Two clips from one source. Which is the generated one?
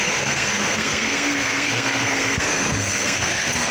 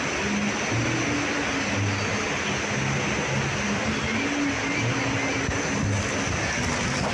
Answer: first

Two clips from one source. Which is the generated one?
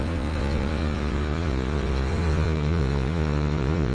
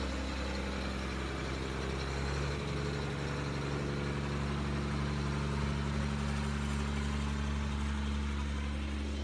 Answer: first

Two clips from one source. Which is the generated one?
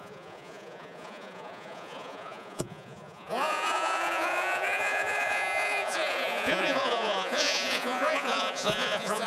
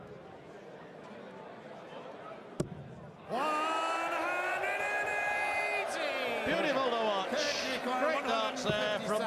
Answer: first